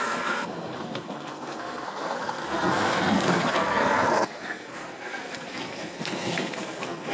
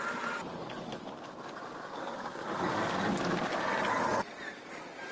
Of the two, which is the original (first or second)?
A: second